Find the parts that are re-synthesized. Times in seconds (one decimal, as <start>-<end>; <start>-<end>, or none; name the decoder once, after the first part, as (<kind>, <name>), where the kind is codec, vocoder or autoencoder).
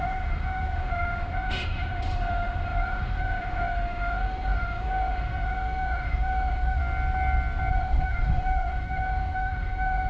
0.0-6.8 (autoencoder, DAC-VAE); 7.7-10.1